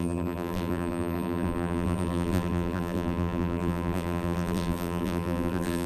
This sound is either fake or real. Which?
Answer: fake